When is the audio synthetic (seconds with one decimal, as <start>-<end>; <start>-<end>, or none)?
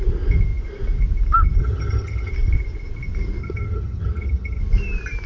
1.6-2.3; 3.4-4.6